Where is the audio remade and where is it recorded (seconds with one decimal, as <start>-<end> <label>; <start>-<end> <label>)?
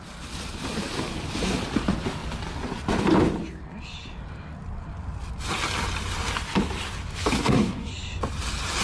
0.0-7.4 recorded; 7.4-7.9 remade; 7.9-8.8 recorded